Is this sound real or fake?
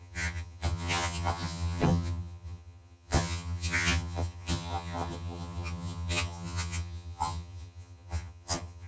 fake